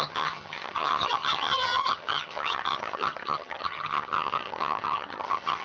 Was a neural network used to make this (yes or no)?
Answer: yes